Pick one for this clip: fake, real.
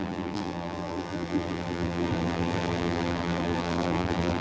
fake